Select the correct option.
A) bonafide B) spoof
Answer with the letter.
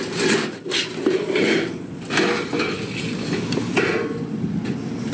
A